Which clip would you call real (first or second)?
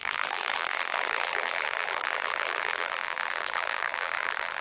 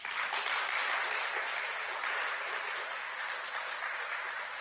second